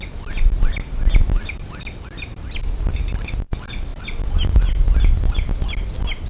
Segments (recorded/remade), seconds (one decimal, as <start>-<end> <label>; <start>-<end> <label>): 0.0-6.3 recorded